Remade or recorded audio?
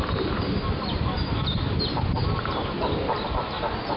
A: recorded